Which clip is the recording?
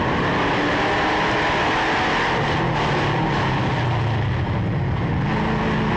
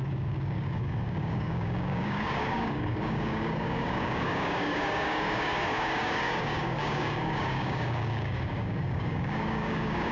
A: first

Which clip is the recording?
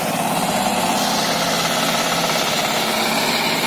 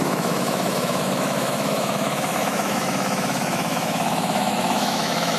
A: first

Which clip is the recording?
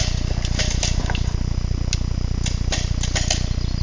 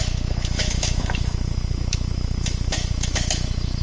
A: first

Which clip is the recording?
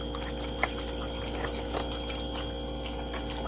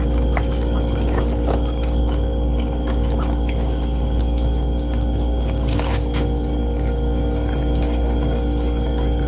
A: first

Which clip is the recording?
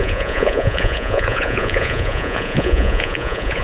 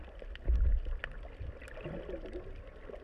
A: second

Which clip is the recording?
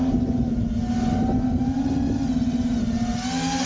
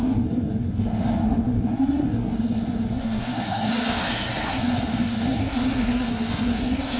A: first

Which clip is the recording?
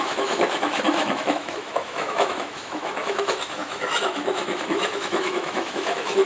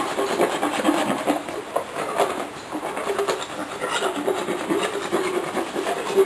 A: second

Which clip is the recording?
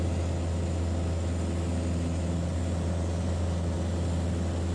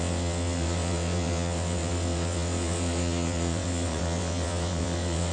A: first